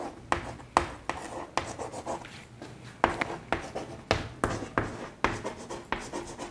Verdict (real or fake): real